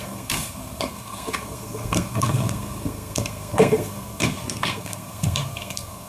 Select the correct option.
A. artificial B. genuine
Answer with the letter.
A